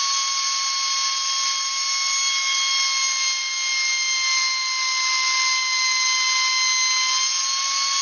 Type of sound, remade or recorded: recorded